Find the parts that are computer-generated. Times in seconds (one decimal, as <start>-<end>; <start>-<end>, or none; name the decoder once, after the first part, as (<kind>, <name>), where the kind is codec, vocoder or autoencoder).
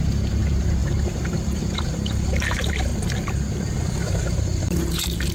0.0-2.9 (vocoder, BigVGAN v2); 3.5-5.3